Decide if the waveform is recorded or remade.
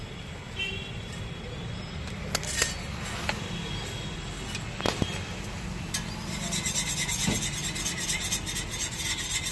recorded